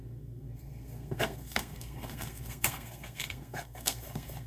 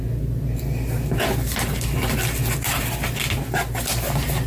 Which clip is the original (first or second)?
second